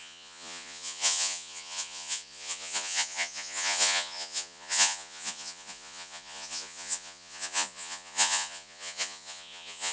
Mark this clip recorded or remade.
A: remade